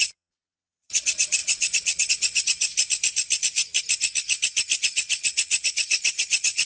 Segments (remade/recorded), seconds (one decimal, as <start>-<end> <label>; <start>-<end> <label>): 0.0-2.7 remade; 2.7-4.8 recorded; 4.8-6.6 remade